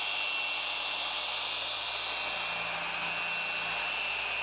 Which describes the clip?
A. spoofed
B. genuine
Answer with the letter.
B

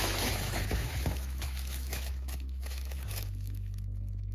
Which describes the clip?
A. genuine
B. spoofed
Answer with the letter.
B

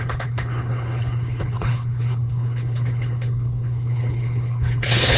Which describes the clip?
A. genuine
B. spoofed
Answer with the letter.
B